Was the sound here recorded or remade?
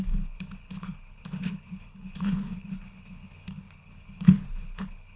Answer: remade